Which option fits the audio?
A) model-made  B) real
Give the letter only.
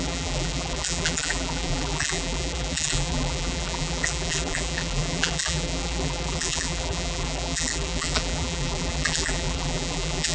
A